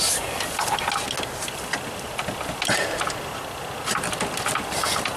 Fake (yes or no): no